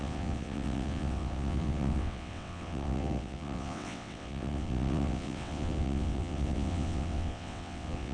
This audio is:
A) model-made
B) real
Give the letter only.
A